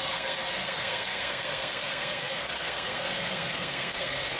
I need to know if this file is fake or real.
fake